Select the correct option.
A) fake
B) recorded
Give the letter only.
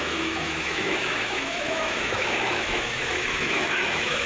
A